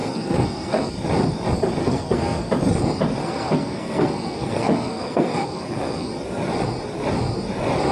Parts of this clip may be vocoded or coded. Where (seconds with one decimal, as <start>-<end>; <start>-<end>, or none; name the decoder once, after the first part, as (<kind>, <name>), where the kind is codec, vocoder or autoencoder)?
0.0-0.9 (codec, SNAC); 1.8-2.5; 3.2-6.1